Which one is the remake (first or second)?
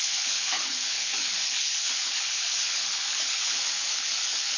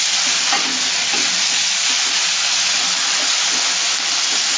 first